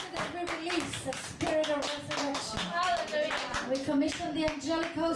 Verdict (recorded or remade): recorded